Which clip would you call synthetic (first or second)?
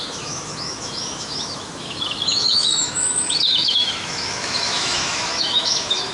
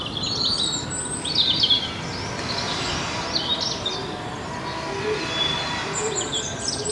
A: first